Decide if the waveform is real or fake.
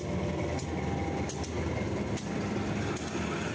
real